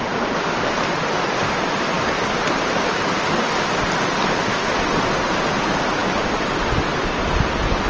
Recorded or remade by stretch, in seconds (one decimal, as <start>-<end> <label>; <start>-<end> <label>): 0.0-7.9 recorded